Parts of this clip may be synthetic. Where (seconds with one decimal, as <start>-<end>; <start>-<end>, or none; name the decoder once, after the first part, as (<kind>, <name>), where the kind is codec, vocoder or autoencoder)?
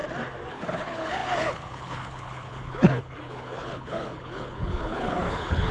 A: 0.5-5.7 (codec, HILCodec)